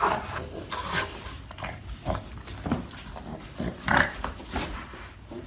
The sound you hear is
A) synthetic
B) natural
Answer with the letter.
B